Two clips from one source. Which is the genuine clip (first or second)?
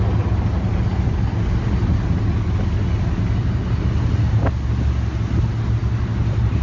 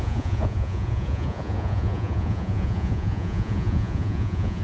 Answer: first